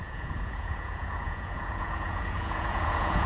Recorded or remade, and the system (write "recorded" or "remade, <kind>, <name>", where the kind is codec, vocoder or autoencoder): remade, vocoder, Vocos